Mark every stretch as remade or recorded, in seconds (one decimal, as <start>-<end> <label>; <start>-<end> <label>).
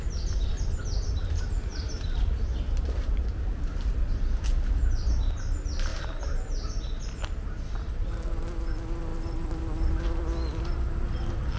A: 0.0-1.7 recorded; 1.7-4.2 remade; 4.2-5.9 recorded; 5.9-7.9 remade; 7.9-9.1 recorded; 9.1-9.6 remade; 9.6-11.6 recorded